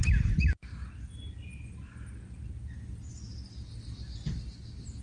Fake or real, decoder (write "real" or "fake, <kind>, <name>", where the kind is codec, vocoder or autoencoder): real